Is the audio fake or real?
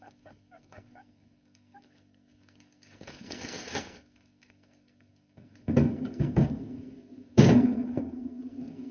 fake